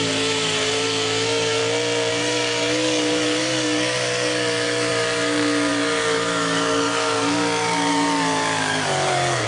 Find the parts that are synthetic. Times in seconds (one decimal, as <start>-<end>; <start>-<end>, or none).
0.0-1.6; 2.1-9.5